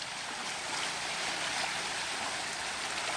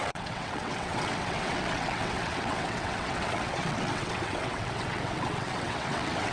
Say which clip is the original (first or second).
first